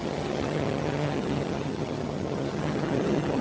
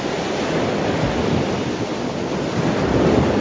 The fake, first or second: first